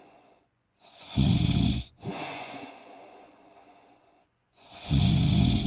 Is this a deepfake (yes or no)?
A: yes